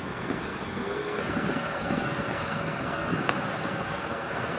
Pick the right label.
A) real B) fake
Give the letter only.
B